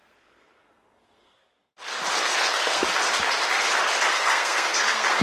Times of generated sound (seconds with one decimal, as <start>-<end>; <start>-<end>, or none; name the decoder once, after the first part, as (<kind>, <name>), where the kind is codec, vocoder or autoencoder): 0.0-1.6 (codec, SNAC); 2.2-2.8; 4.1-5.2